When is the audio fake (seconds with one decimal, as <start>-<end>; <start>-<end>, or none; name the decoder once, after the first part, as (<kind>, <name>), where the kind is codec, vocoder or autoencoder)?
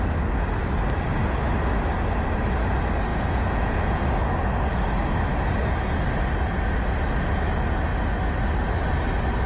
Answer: 3.1-4.0 (vocoder, Vocos)